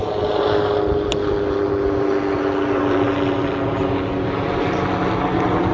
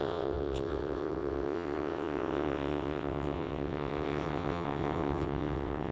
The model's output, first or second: second